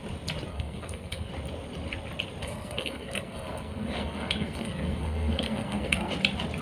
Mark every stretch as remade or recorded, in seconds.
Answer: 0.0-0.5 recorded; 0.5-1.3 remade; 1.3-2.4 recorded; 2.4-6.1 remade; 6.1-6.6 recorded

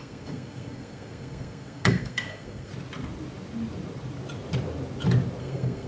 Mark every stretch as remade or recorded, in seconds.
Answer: 0.0-2.7 remade; 2.7-5.4 recorded; 5.4-5.9 remade

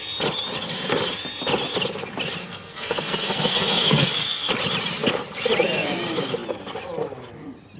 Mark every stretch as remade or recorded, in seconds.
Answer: 0.0-2.4 recorded; 2.4-4.5 remade; 4.5-7.8 recorded